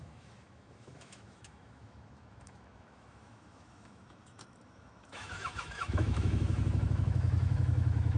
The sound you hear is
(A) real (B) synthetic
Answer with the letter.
B